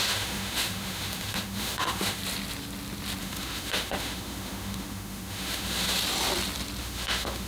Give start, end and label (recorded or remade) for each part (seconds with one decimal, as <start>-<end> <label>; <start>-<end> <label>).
0.0-2.2 remade; 2.2-3.2 recorded; 3.2-6.0 remade; 6.0-6.8 recorded; 6.8-7.5 remade